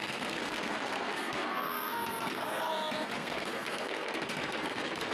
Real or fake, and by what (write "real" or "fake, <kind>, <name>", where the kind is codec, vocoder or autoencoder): fake, codec, SNAC